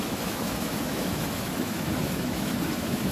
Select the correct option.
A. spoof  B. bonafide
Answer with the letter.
A